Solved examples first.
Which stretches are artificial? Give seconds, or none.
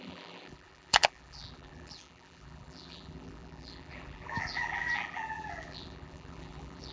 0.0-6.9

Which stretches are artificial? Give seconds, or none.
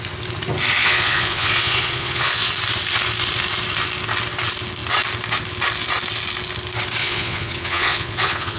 0.8-2.5; 7.0-8.6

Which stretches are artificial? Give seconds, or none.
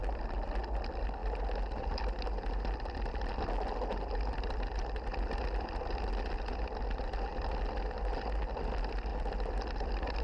none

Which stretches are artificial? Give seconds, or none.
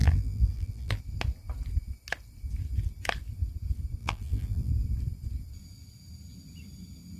0.0-1.0; 4.0-4.7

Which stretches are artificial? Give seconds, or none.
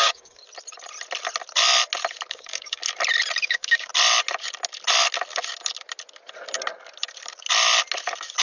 0.0-0.4; 2.3-2.8; 3.4-3.9